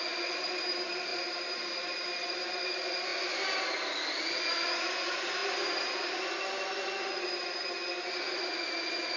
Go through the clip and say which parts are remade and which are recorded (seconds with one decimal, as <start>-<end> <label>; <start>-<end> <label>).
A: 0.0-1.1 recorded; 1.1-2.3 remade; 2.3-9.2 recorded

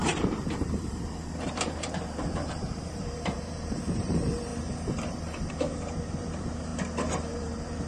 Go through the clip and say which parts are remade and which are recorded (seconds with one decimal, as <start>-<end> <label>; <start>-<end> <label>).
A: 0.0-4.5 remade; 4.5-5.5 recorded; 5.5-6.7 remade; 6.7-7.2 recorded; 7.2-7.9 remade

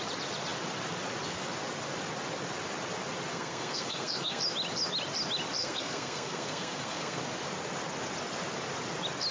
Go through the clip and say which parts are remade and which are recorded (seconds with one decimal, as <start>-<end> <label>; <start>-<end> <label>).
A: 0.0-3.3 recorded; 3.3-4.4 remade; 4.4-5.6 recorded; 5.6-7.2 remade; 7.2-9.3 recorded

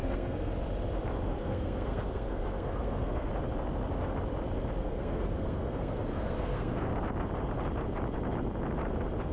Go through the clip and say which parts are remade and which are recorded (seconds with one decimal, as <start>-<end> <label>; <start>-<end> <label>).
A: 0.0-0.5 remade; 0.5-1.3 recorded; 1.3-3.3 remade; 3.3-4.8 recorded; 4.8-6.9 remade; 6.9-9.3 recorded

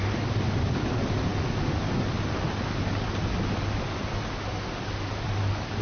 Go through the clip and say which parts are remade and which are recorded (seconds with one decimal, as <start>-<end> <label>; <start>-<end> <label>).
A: 0.0-5.8 recorded

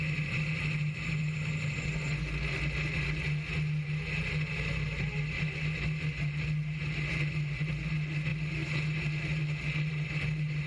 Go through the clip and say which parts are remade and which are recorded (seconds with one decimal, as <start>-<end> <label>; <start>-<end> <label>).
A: 0.0-10.7 recorded

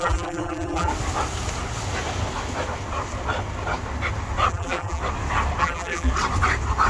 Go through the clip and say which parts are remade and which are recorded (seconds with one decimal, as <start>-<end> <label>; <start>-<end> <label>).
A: 0.0-0.9 remade; 0.9-4.5 recorded; 4.5-5.0 remade; 5.0-5.6 recorded; 5.6-6.1 remade; 6.1-6.9 recorded